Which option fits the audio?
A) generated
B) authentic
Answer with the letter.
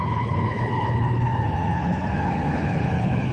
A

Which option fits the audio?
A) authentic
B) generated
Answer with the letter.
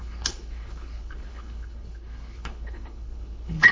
B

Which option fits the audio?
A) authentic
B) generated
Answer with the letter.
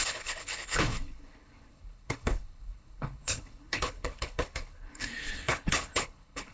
B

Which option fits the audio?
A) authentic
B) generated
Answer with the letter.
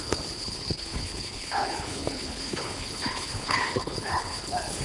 B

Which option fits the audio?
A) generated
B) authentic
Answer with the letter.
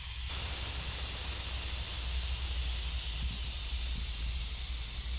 B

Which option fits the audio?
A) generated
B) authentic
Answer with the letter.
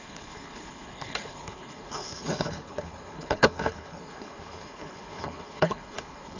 A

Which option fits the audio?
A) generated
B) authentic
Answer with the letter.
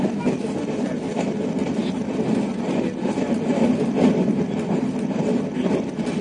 B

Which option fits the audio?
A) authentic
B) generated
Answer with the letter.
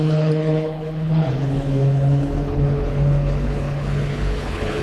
B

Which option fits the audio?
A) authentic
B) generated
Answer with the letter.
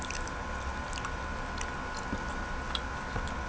A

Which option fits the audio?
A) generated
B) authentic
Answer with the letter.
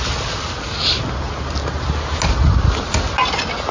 B